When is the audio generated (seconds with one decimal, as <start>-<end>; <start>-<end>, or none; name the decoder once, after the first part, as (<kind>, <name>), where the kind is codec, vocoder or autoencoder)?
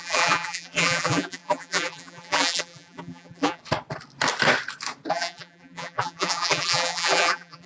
0.0-3.6 (vocoder, BigVGAN v2); 5.1-7.7